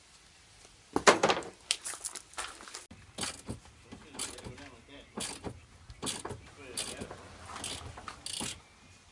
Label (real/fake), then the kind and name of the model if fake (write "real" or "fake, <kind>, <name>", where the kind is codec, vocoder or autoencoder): real